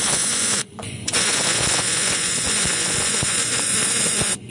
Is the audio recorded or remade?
remade